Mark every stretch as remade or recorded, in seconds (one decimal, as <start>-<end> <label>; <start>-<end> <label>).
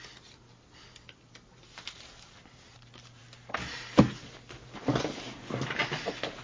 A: 0.0-6.4 recorded